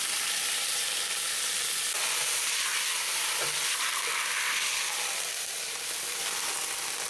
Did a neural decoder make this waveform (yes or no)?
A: yes